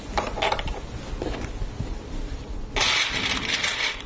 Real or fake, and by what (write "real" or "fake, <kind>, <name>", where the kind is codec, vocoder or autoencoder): real